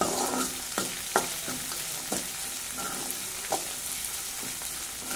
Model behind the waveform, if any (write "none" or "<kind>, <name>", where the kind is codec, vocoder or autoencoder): none